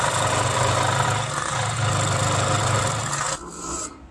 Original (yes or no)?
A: yes